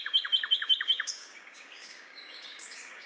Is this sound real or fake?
fake